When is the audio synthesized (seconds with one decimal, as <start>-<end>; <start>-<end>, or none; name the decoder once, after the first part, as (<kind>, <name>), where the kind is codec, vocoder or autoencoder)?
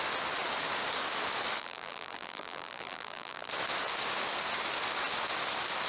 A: 1.6-3.5 (vocoder, BigVGAN v2)